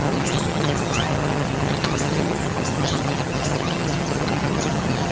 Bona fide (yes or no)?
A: no